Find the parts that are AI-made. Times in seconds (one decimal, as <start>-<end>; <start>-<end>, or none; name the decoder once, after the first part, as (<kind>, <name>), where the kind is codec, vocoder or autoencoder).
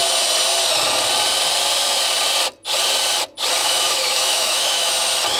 3.6-4.9 (autoencoder, DAC-VAE)